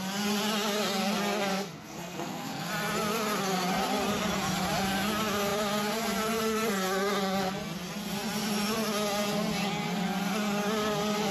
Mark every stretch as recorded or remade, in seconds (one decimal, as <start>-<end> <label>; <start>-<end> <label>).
0.0-1.5 recorded; 1.5-2.7 remade; 2.7-11.3 recorded